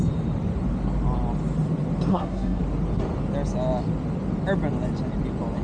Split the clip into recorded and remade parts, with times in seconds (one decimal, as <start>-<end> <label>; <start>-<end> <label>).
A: 0.0-2.1 recorded; 2.1-2.6 remade; 2.6-5.6 recorded